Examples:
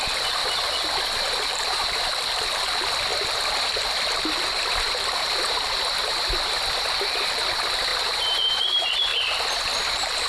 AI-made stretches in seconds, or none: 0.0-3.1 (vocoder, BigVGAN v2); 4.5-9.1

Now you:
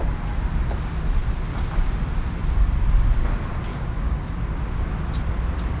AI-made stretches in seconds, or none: 3.7-4.3 (codec, DAC)

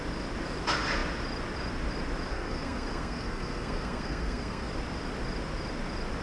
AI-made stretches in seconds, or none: 2.3-4.7 (codec, SNAC)